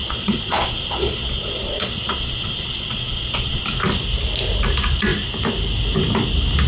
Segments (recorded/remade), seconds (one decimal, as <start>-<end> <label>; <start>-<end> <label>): 0.0-3.6 remade; 3.6-6.7 recorded